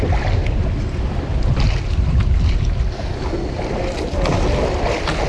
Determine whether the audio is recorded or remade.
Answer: recorded